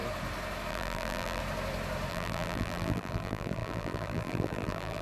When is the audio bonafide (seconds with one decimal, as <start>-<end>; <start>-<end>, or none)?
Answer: 0.0-0.7; 1.4-2.1